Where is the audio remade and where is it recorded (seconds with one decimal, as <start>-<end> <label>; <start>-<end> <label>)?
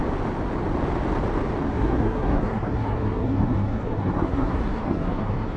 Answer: 0.0-1.7 recorded; 1.7-5.6 remade